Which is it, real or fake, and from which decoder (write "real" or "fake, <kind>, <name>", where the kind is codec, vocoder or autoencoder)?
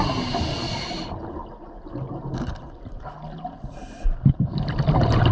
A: real